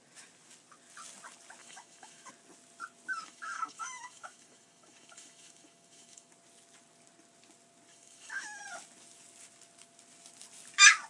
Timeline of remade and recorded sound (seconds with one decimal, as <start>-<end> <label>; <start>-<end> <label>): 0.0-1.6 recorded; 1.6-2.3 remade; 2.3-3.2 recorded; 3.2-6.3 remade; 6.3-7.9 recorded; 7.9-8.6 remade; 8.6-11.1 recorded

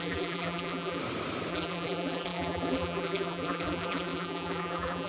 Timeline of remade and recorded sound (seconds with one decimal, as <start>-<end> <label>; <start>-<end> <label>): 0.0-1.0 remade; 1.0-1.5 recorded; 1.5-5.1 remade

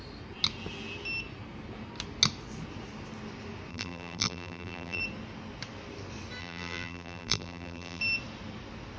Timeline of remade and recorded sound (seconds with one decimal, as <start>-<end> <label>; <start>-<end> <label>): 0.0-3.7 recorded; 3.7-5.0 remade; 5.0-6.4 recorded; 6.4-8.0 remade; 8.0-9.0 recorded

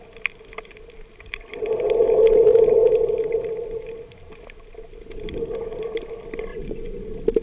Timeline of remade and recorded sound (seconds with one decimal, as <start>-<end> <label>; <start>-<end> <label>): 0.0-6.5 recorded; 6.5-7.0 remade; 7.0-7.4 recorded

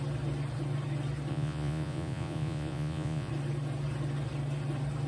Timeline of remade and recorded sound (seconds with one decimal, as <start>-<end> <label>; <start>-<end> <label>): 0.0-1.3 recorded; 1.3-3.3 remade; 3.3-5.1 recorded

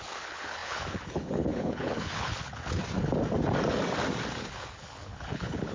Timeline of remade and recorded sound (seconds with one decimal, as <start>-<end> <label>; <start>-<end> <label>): 0.0-2.8 remade; 2.8-4.4 recorded; 4.4-5.7 remade

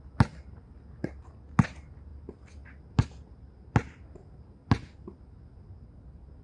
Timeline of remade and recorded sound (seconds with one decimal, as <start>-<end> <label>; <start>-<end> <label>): 0.0-6.4 recorded